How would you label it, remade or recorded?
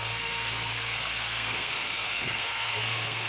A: remade